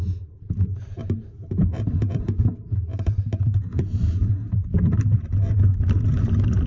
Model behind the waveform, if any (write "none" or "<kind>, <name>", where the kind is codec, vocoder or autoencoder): vocoder, BigVGAN v2